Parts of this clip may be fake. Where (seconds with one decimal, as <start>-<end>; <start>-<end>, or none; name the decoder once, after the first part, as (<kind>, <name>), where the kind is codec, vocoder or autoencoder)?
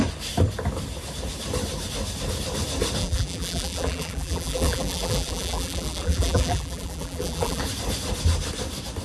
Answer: 3.0-7.6 (vocoder, BigVGAN v2)